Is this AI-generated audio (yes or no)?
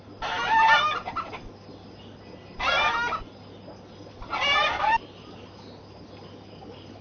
no